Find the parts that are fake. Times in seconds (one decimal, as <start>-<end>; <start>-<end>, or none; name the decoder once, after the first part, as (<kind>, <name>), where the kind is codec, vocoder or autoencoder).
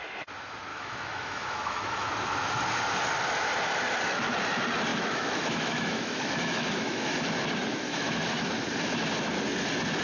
0.7-2.1 (autoencoder, DAC-VAE); 4.9-7.1; 7.7-8.5